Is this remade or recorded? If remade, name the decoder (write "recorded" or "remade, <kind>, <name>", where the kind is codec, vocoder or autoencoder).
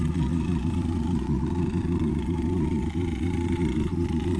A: remade, vocoder, Vocos